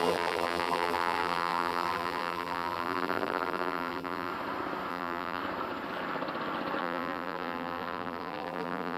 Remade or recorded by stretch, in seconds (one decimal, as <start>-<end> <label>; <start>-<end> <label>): 0.0-4.3 remade; 4.3-4.9 recorded; 4.9-5.4 remade; 5.4-6.8 recorded; 6.8-9.0 remade